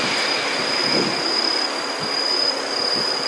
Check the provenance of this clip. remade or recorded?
recorded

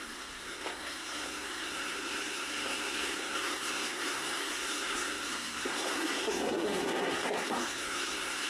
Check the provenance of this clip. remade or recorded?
remade